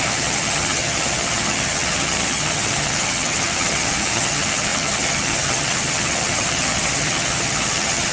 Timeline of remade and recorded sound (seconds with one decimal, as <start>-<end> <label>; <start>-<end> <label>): 0.0-8.1 remade